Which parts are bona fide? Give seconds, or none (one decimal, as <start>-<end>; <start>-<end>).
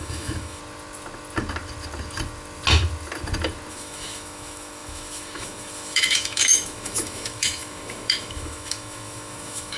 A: 0.6-3.7